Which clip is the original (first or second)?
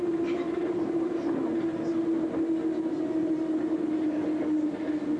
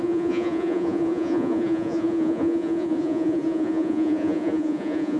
first